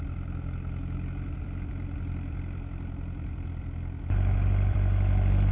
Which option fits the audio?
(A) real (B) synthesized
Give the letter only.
A